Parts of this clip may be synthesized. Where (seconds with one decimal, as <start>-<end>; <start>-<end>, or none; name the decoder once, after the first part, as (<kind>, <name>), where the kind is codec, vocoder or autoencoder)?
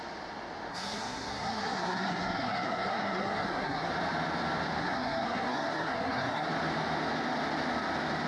0.7-3.9 (codec, SNAC); 4.8-6.5